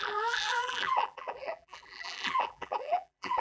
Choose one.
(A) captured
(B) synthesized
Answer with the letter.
B